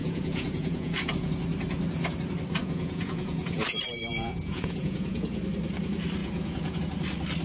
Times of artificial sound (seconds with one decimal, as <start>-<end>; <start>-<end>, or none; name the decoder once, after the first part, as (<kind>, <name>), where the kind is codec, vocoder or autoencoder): 0.0-1.3 (vocoder, Vocos); 2.6-5.4; 6.2-6.8